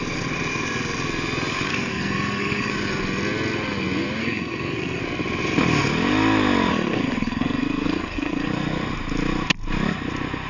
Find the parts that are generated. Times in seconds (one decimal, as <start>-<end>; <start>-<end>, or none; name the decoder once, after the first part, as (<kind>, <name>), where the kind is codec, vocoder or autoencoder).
1.7-2.7 (codec, SNAC); 4.2-5.0; 6.7-8.5